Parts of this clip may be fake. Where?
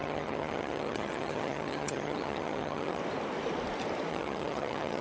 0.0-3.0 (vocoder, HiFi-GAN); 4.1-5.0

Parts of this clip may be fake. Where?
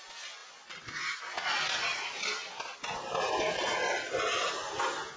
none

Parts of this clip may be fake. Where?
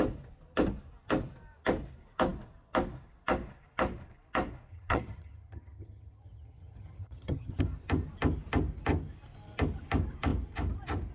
4.7-7.6 (vocoder, HiFi-GAN)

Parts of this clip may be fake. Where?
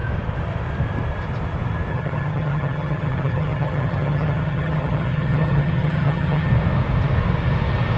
1.9-6.5 (vocoder, HiFi-GAN)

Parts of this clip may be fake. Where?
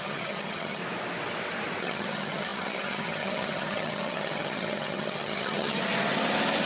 0.0-0.8 (vocoder, HiFi-GAN); 1.8-5.8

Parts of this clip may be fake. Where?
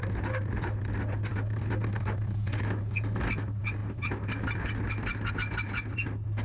none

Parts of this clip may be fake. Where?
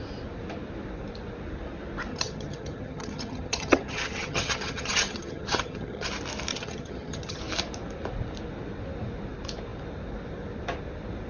2.1-6.1 (vocoder, HiFi-GAN); 6.5-7.4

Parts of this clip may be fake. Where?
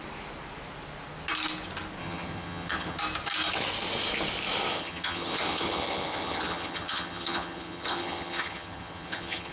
2.0-3.0 (vocoder, HiFi-GAN); 4.7-9.5